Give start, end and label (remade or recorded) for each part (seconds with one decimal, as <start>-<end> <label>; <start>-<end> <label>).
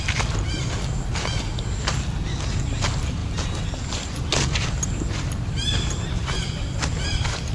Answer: 0.0-7.5 recorded